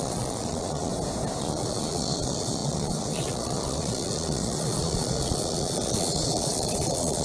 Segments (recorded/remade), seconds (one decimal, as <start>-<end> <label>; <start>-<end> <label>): 0.0-0.9 remade; 0.9-1.4 recorded; 1.4-7.2 remade